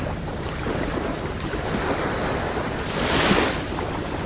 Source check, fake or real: fake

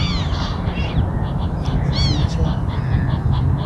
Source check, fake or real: real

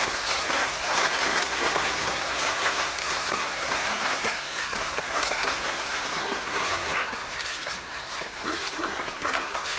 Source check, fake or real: fake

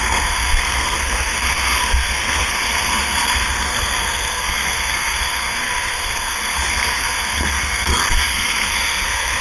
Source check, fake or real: fake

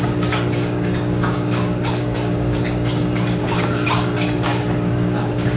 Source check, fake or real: fake